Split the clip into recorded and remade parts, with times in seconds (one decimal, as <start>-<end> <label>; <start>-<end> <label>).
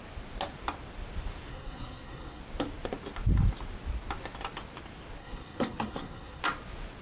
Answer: 0.0-1.5 recorded; 1.5-2.4 remade; 2.4-5.2 recorded; 5.2-6.4 remade; 6.4-7.0 recorded